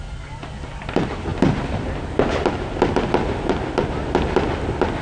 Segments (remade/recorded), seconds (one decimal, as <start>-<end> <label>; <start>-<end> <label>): 0.0-5.0 recorded